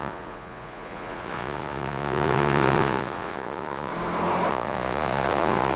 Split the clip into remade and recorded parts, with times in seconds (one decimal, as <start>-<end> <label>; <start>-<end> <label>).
0.0-3.9 remade; 3.9-4.5 recorded; 4.5-5.8 remade